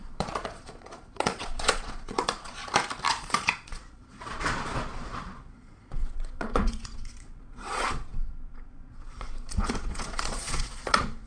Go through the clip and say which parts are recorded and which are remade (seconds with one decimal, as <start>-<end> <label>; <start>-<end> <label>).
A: 0.0-2.6 remade; 2.6-3.1 recorded; 3.1-11.3 remade